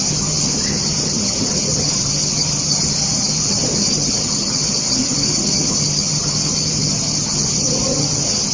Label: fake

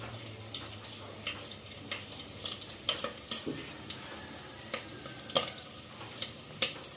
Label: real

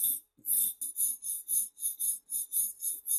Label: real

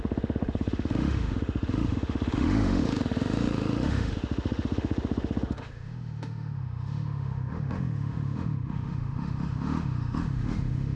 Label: fake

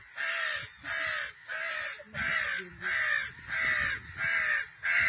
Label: real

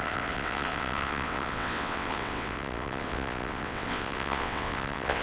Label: fake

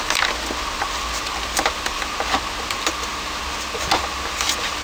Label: real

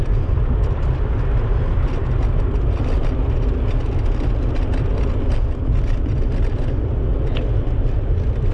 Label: real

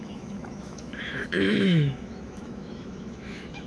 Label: fake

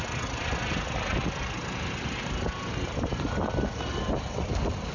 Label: real